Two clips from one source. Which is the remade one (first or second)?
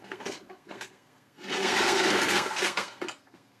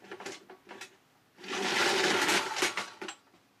first